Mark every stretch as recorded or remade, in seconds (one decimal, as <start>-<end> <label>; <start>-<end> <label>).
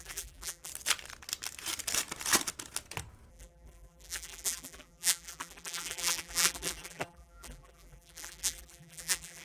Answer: 0.0-0.7 remade; 0.7-3.3 recorded; 3.3-9.4 remade